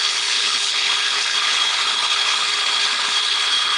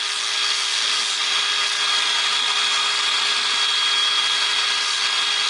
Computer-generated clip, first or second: first